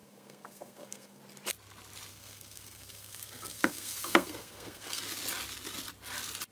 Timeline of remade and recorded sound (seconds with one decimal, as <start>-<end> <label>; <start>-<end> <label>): 0.0-1.2 remade; 1.2-2.1 recorded; 2.1-5.0 remade; 5.0-6.5 recorded